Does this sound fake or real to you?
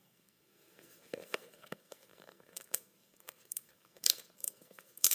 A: fake